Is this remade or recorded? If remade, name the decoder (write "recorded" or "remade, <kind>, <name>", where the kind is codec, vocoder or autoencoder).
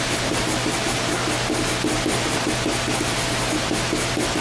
recorded